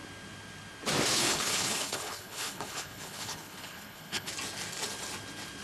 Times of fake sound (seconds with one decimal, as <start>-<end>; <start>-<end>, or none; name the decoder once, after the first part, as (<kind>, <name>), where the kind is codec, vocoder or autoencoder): 1.1-4.3 (codec, HILCodec)